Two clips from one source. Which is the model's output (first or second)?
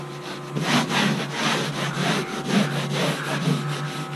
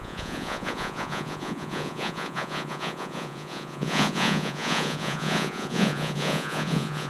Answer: second